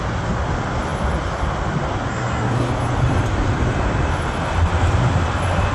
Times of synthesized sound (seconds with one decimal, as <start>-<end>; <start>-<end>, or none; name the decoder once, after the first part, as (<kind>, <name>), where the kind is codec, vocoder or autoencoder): 2.1-2.7 (codec, SNAC)